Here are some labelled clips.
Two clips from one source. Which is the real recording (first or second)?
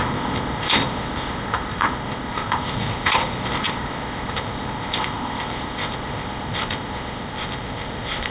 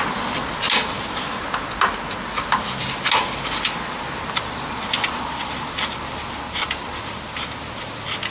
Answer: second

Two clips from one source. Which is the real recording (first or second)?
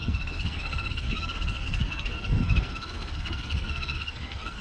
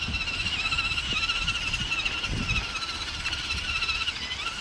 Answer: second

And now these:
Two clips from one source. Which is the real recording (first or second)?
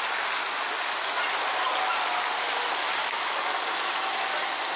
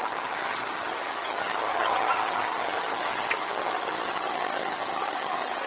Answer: first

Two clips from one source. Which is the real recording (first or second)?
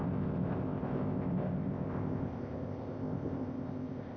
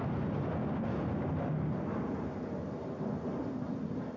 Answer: second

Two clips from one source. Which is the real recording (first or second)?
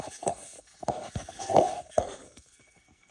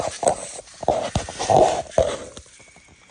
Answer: second